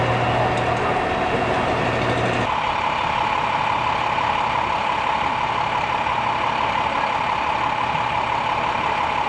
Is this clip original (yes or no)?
yes